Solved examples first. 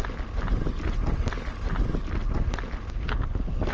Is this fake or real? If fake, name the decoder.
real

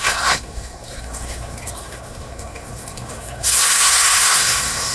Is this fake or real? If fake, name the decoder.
fake, codec, SNAC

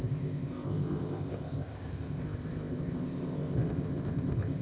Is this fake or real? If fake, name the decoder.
fake, codec, ZipCodec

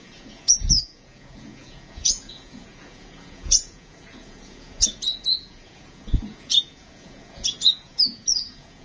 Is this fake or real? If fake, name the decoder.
fake, vocoder, Vocos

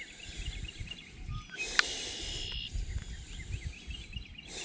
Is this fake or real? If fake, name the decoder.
real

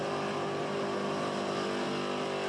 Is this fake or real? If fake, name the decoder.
real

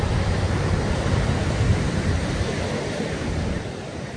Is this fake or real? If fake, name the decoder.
fake, vocoder, BigVGAN v2